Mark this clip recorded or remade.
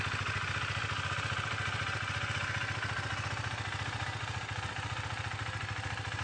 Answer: recorded